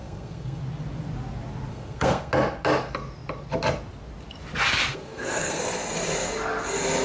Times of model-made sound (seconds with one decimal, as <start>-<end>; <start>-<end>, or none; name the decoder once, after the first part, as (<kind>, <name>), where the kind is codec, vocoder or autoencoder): 0.0-0.6 (codec, SNAC); 1.7-2.3; 4.9-5.6